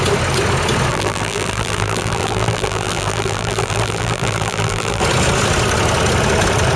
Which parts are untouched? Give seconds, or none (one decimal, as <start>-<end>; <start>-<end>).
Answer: 0.0-0.9; 5.0-6.8